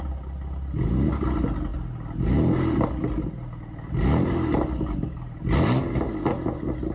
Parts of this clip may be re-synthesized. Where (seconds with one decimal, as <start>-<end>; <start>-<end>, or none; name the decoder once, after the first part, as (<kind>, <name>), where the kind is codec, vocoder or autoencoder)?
none